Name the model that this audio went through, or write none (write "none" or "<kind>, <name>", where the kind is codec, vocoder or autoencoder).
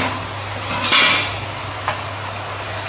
none